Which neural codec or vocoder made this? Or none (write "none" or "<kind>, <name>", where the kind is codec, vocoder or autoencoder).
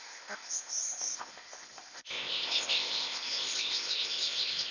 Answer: codec, ZipCodec